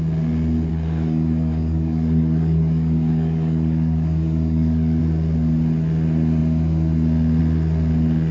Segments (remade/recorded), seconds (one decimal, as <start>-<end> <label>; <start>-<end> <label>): 0.0-0.7 recorded; 0.7-5.0 remade; 5.0-8.3 recorded